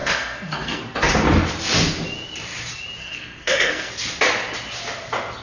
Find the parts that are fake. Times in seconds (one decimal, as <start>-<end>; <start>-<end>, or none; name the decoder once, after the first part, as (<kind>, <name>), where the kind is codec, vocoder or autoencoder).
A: 0.0-0.8 (codec, SNAC); 3.0-3.9